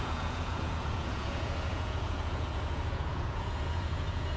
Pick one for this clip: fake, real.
fake